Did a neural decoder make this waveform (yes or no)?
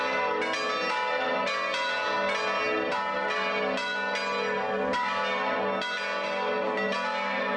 no